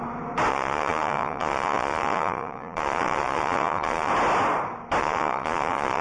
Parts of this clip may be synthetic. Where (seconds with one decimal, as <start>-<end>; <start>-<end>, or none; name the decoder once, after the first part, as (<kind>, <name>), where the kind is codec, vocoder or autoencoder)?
0.5-4.1 (vocoder, Vocos); 5.0-6.0